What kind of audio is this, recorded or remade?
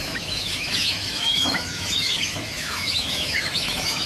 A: remade